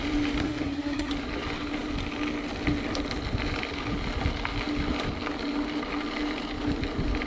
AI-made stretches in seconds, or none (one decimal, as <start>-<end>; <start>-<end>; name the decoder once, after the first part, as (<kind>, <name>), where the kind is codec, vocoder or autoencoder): 0.4-1.1 (codec, SNAC)